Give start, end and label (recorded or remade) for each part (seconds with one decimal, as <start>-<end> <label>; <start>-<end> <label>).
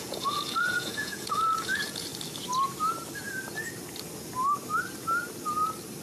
0.0-2.1 remade; 2.1-6.0 recorded